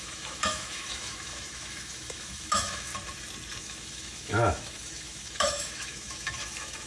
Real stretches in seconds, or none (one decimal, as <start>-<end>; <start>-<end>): 2.9-3.6